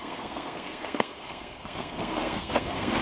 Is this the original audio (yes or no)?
no